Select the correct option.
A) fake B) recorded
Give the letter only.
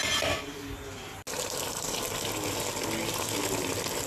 B